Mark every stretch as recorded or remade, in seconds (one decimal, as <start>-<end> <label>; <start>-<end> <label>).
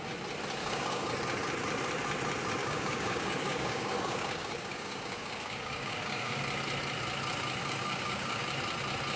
0.0-0.6 recorded; 0.6-1.1 remade; 1.1-2.6 recorded; 2.6-6.4 remade; 6.4-7.6 recorded; 7.6-8.4 remade; 8.4-9.2 recorded